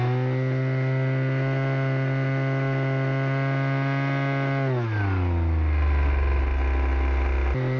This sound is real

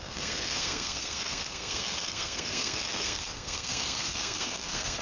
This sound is fake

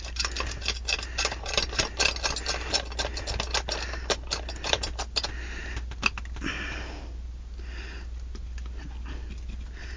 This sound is real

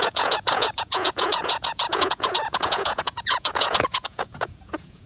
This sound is fake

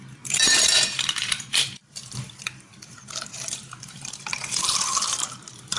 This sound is fake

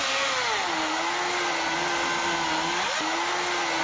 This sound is real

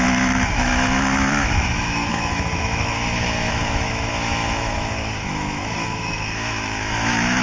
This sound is fake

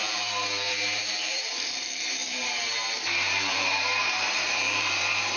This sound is fake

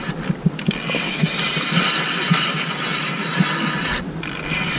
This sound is real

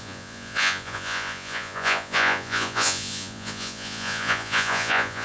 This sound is fake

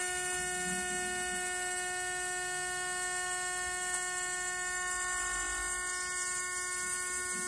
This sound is real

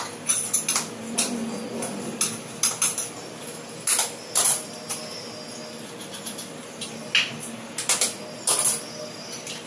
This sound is real